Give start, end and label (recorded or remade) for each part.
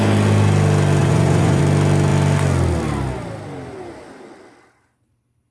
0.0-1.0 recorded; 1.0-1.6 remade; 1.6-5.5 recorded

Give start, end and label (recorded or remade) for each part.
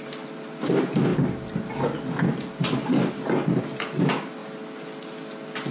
0.0-5.7 recorded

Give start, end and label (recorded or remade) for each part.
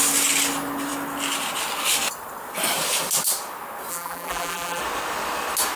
0.0-3.9 recorded; 3.9-4.8 remade; 4.8-5.8 recorded